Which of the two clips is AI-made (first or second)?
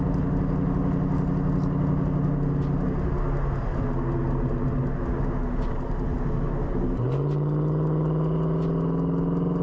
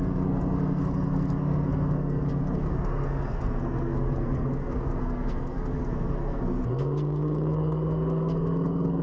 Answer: second